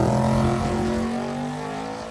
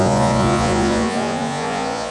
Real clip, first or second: first